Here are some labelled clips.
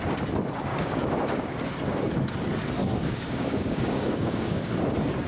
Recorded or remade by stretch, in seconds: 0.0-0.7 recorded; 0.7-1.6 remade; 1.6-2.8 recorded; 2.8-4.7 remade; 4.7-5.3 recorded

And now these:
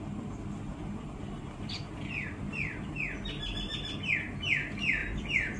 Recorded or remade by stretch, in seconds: 0.0-0.7 recorded; 0.7-4.1 remade; 4.1-5.0 recorded; 5.0-5.6 remade

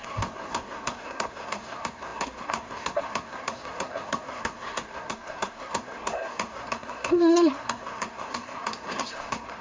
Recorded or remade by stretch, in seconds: 0.0-9.6 remade

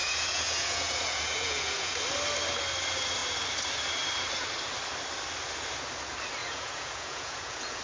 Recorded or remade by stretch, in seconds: 0.0-2.0 remade; 2.0-6.4 recorded; 6.4-7.8 remade

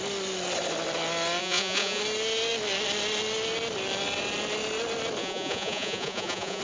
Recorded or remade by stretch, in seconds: 0.0-1.4 recorded; 1.4-2.0 remade; 2.0-5.2 recorded; 5.2-6.6 remade

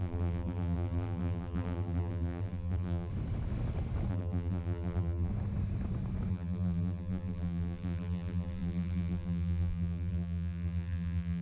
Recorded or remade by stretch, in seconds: 0.0-3.1 remade; 3.1-4.1 recorded; 4.1-5.3 remade; 5.3-6.3 recorded; 6.3-11.4 remade